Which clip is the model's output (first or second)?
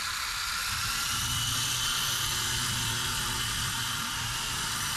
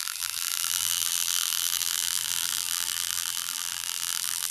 second